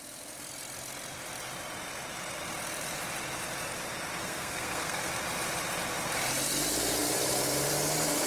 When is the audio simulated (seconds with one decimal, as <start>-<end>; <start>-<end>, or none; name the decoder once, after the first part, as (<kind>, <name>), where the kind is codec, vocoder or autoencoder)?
4.2-5.1 (codec, SNAC)

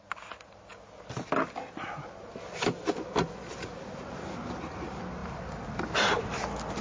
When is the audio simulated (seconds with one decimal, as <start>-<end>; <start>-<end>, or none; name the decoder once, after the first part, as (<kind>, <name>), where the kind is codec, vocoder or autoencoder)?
none

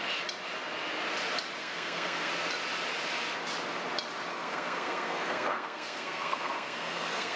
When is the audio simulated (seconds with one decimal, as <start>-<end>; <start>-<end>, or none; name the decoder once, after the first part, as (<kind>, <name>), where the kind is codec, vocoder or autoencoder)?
1.6-2.3 (codec, SNAC); 4.3-7.4

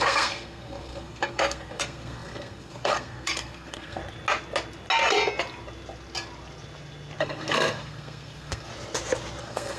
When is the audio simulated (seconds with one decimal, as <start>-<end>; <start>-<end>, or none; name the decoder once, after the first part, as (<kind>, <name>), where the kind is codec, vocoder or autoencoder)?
0.0-4.0 (codec, SNAC); 7.2-8.7; 9.4-9.8

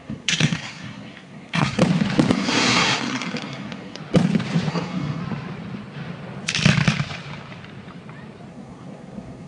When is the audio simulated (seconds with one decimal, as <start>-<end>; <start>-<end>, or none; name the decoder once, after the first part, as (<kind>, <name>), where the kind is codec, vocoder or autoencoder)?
0.0-1.8 (codec, SNAC); 2.3-4.0; 4.7-5.2; 8.5-9.5

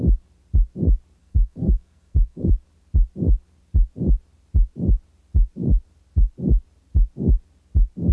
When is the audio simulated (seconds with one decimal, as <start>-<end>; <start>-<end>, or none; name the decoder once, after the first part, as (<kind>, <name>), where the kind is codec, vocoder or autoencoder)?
1.2-2.5 (codec, SNAC)

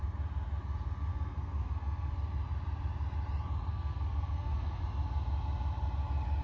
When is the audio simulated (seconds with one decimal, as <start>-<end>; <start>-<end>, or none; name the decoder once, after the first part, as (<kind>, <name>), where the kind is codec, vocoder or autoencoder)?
1.1-2.1 (codec, SNAC); 3.7-4.8

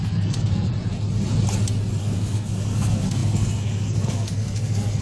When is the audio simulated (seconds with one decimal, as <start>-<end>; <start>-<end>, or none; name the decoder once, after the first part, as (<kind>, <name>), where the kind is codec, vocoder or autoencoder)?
0.0-0.7 (codec, SNAC); 2.0-5.0